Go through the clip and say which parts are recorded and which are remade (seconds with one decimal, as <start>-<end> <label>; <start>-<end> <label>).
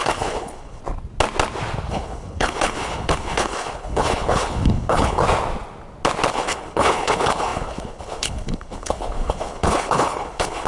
0.0-0.8 remade; 0.8-1.9 recorded; 1.9-5.2 remade; 5.2-6.3 recorded; 6.3-10.7 remade